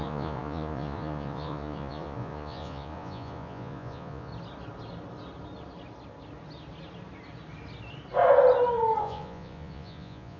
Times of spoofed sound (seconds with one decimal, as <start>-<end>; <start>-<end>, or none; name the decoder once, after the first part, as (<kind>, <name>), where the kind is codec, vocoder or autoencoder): 0.0-4.3 (vocoder, Vocos); 9.0-10.4